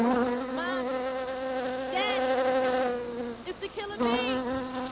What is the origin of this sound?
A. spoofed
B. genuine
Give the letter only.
B